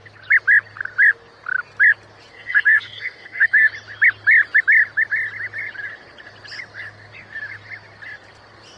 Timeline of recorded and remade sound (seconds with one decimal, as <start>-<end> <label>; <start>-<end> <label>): 0.0-2.3 recorded; 2.3-3.7 remade; 3.7-8.8 recorded